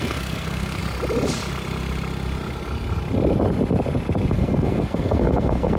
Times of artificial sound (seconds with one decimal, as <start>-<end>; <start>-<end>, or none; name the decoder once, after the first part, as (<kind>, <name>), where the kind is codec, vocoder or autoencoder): 0.0-0.8 (codec, SNAC); 4.3-5.8